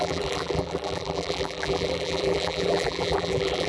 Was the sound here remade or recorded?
remade